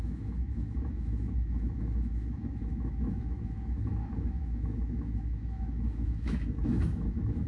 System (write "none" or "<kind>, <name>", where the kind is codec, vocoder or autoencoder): autoencoder, DAC-VAE